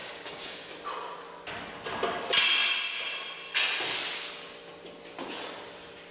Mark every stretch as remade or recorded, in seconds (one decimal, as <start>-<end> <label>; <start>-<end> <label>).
0.0-0.7 remade; 0.7-6.1 recorded